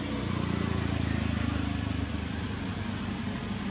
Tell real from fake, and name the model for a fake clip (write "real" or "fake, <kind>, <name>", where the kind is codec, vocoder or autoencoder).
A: real